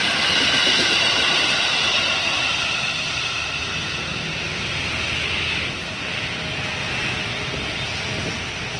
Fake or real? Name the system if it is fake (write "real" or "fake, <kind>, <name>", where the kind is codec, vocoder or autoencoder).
real